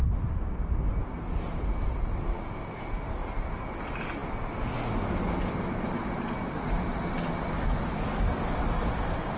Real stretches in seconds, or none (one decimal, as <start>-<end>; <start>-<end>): 0.0-9.4

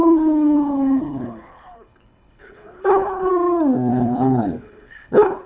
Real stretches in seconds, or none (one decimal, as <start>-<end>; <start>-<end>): 3.3-3.9

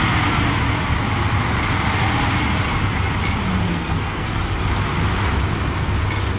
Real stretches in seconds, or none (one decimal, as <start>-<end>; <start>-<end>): 0.0-3.6; 4.4-6.4

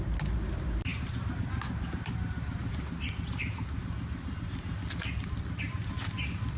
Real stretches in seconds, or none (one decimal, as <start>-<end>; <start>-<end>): 0.0-6.6